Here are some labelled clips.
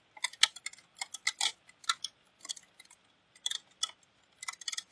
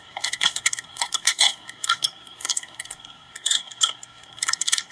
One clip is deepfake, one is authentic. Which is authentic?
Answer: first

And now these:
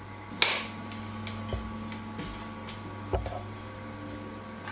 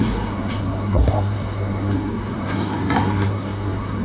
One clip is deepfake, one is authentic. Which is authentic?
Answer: first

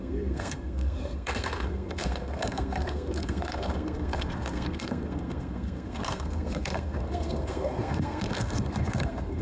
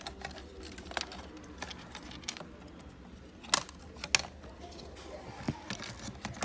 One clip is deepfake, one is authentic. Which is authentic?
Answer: second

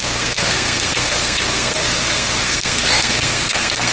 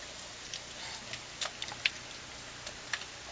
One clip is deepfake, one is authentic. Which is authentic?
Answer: second